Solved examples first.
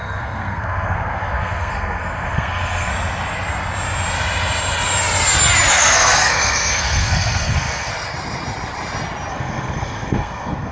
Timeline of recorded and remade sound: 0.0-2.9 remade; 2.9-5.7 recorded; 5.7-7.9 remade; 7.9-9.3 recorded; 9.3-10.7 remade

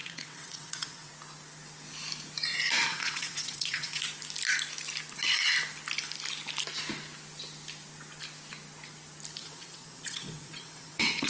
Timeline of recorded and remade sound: 0.0-1.1 remade; 1.1-2.9 recorded; 2.9-4.0 remade; 4.0-9.4 recorded; 9.4-11.3 remade

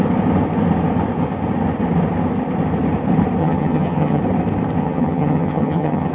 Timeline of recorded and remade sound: 0.0-3.4 recorded; 3.4-4.2 remade; 4.2-4.8 recorded; 4.8-6.1 remade

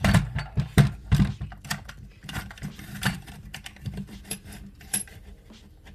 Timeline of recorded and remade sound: 0.0-5.9 remade

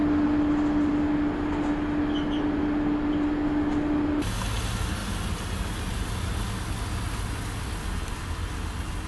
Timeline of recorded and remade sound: 0.0-9.1 recorded

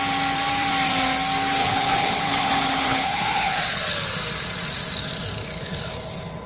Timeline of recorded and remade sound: 0.0-1.6 recorded; 1.6-3.9 remade; 3.9-6.5 recorded

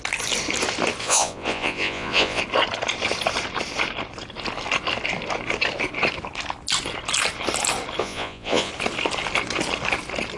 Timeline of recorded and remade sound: 0.0-1.0 recorded; 1.0-2.4 remade; 2.4-8.0 recorded; 8.0-8.7 remade; 8.7-10.4 recorded